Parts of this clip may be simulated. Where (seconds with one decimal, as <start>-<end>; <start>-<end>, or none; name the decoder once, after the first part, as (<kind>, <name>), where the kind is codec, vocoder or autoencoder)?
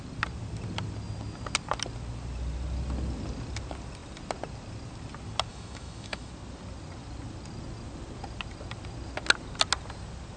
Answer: 5.5-6.3 (autoencoder, DAC-VAE)